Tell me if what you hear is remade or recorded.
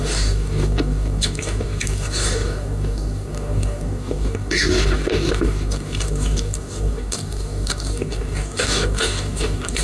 remade